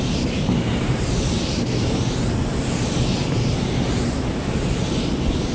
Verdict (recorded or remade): recorded